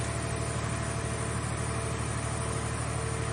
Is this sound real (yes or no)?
yes